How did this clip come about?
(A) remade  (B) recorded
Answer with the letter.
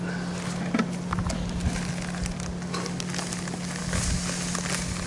B